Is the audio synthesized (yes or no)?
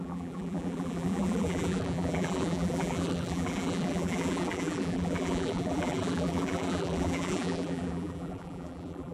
yes